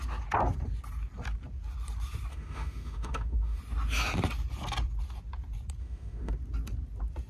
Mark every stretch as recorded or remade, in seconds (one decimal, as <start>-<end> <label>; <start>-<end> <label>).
0.0-2.3 recorded; 2.3-3.6 remade; 3.6-5.8 recorded; 5.8-6.3 remade; 6.3-7.3 recorded